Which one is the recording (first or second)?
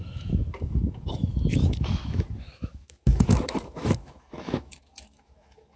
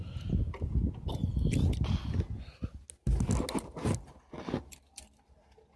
second